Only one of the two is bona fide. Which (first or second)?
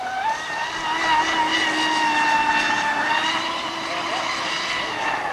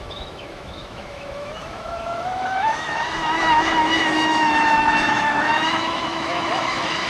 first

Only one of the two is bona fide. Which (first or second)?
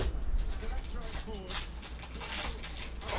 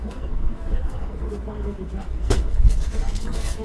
first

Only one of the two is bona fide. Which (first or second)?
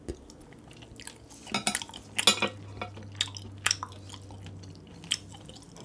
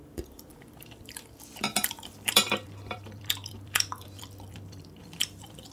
first